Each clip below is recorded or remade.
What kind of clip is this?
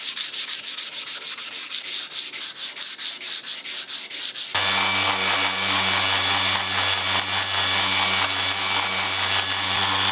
recorded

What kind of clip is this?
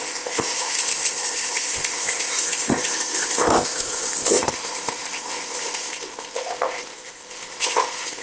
remade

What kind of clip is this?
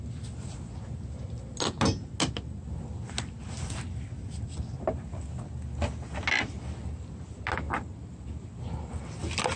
recorded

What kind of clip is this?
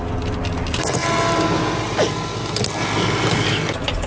recorded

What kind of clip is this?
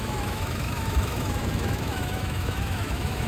remade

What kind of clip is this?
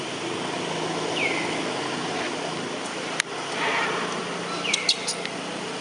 recorded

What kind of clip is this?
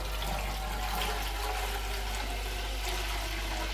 recorded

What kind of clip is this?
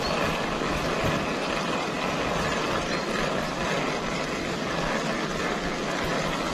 recorded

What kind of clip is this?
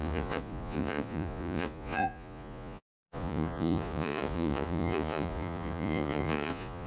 remade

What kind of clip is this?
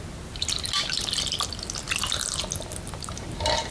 recorded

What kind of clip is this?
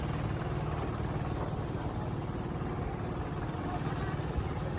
recorded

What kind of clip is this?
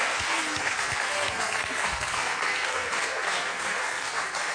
remade